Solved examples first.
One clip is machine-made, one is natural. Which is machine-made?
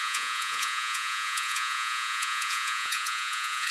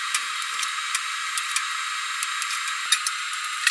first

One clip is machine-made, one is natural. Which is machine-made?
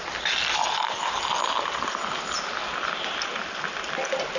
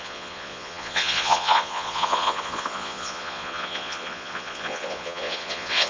second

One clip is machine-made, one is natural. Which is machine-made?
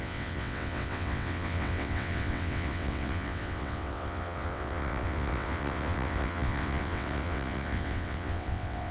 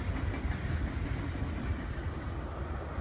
first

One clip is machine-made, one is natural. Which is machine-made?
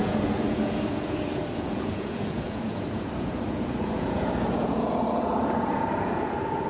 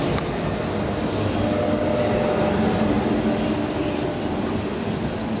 first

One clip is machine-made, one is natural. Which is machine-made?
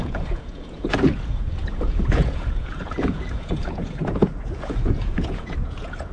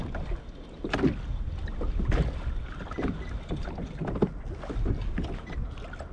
first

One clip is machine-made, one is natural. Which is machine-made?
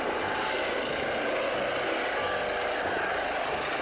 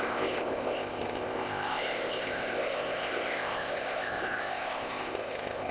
second